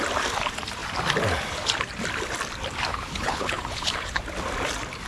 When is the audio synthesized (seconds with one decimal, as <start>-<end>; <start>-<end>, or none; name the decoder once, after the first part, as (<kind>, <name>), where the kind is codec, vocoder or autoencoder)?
2.9-4.2 (codec, HILCodec)